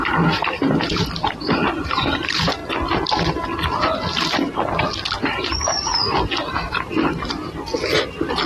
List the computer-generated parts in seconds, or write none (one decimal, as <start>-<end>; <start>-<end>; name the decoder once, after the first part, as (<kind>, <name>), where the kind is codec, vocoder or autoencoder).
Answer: none